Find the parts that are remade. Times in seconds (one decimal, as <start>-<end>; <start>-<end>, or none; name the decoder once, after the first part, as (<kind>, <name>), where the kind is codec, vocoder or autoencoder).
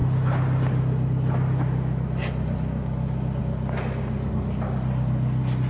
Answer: none